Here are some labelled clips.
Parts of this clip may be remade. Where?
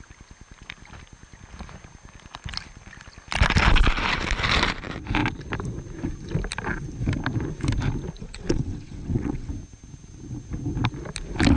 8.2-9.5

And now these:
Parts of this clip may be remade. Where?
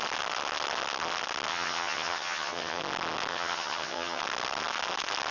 1.5-2.8; 3.3-4.2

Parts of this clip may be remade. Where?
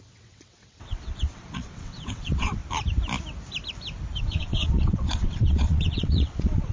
0.0-2.6; 4.2-6.7